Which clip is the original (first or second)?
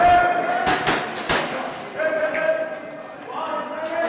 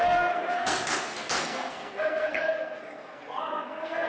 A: first